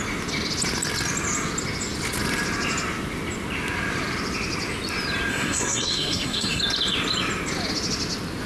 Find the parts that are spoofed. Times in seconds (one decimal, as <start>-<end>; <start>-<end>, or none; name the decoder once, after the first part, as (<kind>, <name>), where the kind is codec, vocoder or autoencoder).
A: 5.3-6.6 (codec, SNAC)